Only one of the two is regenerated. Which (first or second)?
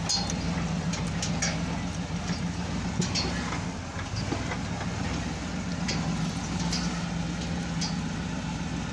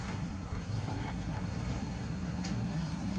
second